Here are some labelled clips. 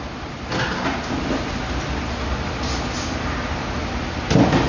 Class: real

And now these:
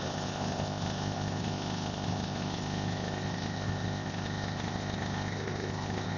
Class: fake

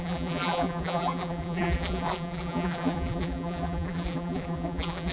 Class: fake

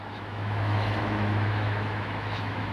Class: fake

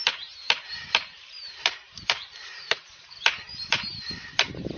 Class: fake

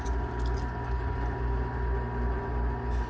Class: real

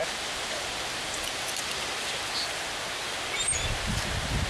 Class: real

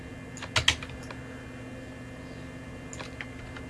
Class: real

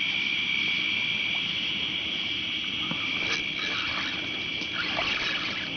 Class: real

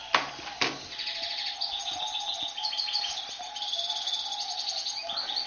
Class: real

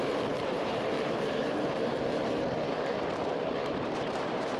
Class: fake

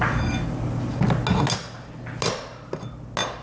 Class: real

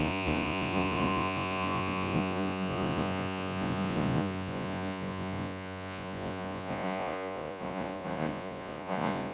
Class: fake